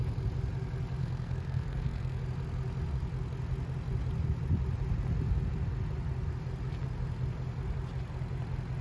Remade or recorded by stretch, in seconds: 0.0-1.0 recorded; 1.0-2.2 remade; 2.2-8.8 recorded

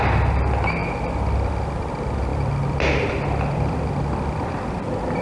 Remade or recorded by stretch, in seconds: 0.0-0.8 recorded; 0.8-1.5 remade; 1.5-2.3 recorded; 2.3-4.6 remade; 4.6-5.2 recorded

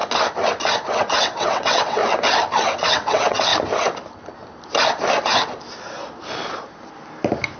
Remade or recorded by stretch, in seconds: 0.0-0.9 recorded; 0.9-2.0 remade; 2.0-2.9 recorded; 2.9-3.5 remade; 3.5-7.6 recorded

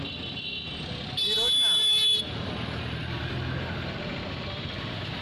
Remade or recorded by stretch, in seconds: 0.0-1.8 recorded; 1.8-3.2 remade; 3.2-5.2 recorded

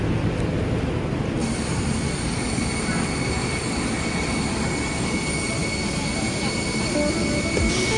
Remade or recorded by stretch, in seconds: 0.0-8.0 recorded